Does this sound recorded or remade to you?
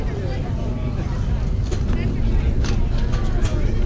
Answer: recorded